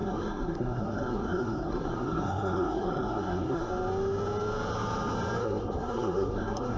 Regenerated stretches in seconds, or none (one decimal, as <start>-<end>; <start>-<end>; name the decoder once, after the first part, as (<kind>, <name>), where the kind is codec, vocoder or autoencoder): 0.0-3.7 (codec, SNAC); 5.4-6.8